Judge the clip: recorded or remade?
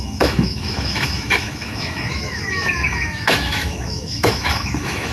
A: remade